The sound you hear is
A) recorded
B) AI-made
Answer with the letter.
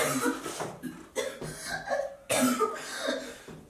A